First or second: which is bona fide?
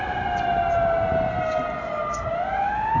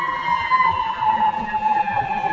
first